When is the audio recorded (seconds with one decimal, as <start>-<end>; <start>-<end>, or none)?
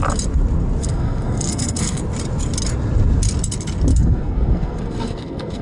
0.0-0.8; 2.0-3.9